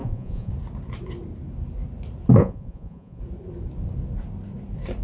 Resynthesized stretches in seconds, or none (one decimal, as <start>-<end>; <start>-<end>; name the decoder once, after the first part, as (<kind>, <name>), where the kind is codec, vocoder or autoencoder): 0.0-0.5 (vocoder, Vocos); 2.4-3.2

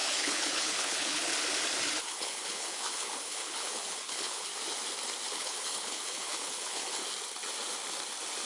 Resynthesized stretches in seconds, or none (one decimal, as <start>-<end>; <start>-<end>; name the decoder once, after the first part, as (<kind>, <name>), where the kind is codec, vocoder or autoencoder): 0.0-1.3 (codec, HILCodec); 2.0-4.5; 5.4-7.0

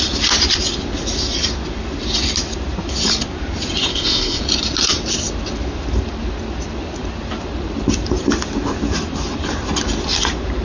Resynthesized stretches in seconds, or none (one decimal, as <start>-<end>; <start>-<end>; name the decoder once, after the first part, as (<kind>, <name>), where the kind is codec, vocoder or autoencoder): 3.9-4.4 (codec, ZipCodec)

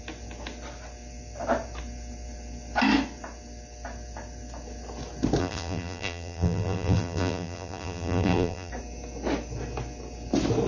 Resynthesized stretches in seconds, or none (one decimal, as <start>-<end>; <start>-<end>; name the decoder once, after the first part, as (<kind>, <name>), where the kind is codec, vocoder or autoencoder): 5.4-8.7 (vocoder, BigVGAN v2)

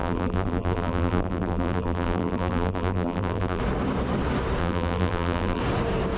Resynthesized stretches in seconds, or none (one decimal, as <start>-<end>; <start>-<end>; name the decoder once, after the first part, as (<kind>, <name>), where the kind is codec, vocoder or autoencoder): 0.0-3.6 (vocoder, BigVGAN v2); 4.6-5.6

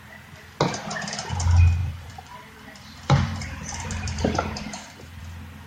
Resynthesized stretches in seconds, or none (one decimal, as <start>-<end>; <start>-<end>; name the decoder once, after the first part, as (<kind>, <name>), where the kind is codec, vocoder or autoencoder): 0.9-1.4 (vocoder, BigVGAN v2); 1.8-5.2

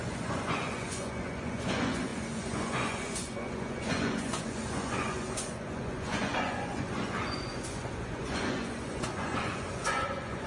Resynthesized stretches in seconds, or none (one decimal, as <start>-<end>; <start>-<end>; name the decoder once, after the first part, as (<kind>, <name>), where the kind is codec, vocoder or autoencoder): 0.0-10.5 (vocoder, Vocos)